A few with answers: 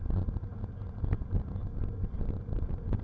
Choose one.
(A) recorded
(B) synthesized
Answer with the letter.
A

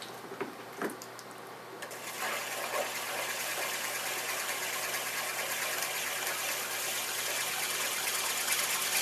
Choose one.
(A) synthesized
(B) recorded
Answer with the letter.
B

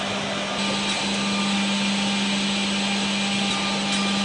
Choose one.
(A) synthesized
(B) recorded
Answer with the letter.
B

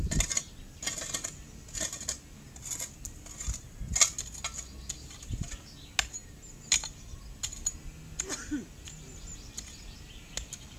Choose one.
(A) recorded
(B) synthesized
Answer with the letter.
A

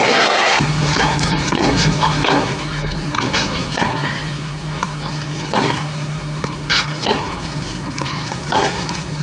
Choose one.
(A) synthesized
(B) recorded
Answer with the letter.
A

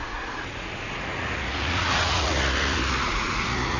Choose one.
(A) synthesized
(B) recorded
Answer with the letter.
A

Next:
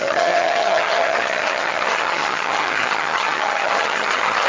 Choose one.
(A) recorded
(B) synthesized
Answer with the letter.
B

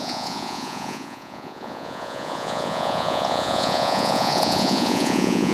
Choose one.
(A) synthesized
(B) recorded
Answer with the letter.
A